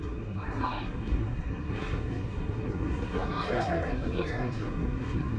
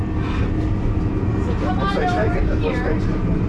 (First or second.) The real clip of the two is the second